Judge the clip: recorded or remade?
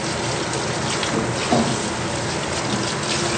recorded